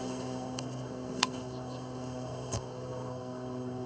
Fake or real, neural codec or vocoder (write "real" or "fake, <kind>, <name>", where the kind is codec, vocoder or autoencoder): fake, codec, SNAC